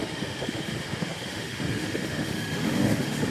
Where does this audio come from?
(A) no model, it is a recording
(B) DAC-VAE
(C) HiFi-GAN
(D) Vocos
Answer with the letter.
B